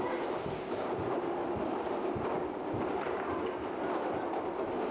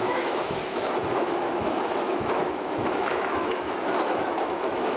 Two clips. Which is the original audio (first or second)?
first